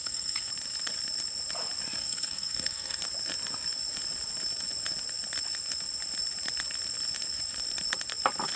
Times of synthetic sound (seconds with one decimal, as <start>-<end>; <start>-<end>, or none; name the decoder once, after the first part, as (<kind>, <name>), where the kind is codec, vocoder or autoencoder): 0.0-0.5 (codec, SNAC); 2.0-3.0